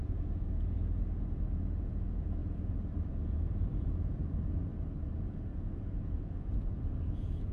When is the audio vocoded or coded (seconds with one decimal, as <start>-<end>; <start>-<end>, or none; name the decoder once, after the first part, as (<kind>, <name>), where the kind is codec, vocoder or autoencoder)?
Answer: 0.0-2.4 (vocoder, Vocos); 3.1-4.7; 5.2-7.5